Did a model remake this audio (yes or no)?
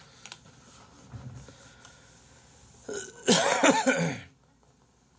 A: no